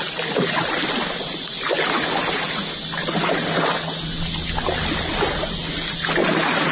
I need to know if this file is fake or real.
real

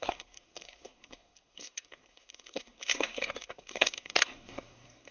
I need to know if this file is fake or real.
fake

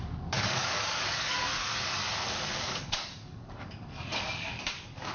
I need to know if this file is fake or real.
fake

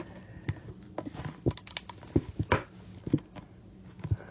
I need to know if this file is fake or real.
real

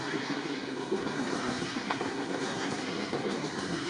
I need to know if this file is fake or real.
fake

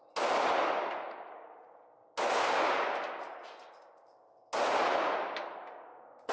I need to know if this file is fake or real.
real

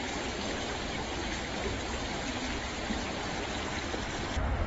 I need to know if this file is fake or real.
real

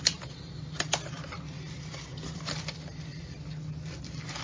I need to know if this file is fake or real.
real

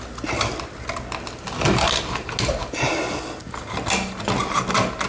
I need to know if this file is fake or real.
real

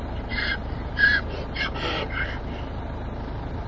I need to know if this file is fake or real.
real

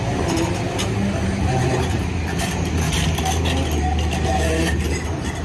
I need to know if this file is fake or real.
real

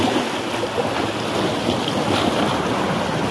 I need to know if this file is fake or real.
real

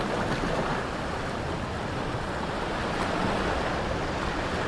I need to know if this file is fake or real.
real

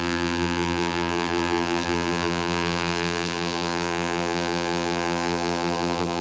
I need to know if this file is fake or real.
fake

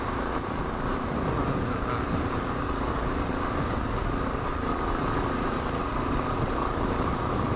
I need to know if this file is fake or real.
real